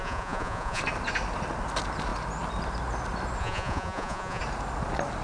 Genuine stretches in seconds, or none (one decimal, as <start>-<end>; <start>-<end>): 0.8-3.4; 4.4-5.2